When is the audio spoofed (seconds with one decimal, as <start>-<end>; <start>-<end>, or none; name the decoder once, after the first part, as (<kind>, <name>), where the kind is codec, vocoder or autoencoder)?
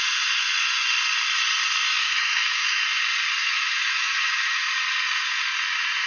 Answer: 2.0-2.8 (autoencoder, DAC-VAE); 3.4-4.7